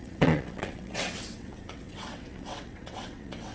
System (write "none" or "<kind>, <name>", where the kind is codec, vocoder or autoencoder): vocoder, WaveNeXt